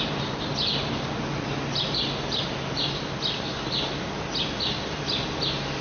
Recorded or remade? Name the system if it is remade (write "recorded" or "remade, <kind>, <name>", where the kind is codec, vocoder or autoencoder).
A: recorded